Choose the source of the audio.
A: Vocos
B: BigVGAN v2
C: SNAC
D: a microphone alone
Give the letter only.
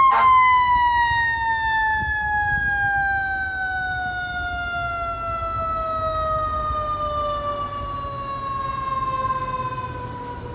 D